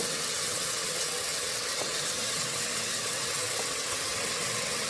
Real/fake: fake